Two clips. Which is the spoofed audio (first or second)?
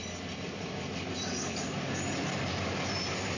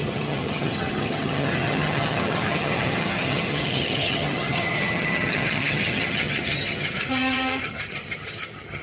second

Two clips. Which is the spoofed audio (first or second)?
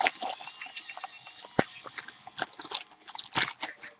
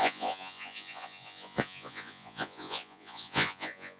second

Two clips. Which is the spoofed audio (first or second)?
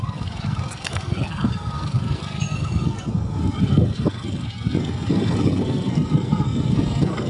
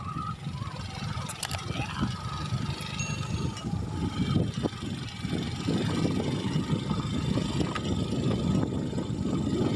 first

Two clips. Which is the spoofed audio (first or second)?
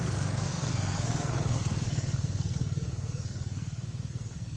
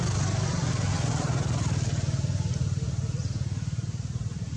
first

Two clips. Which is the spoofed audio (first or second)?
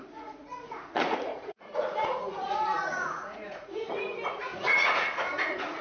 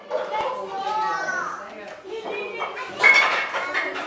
first